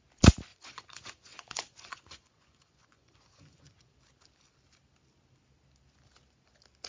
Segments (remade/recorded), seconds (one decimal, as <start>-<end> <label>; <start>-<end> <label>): 0.0-0.5 recorded; 0.5-3.9 remade; 3.9-6.9 recorded